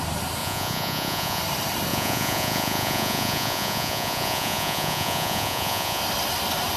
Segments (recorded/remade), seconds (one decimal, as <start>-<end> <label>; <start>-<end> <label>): 0.0-0.4 recorded; 0.4-1.4 remade; 1.4-1.9 recorded; 1.9-6.0 remade; 6.0-6.8 recorded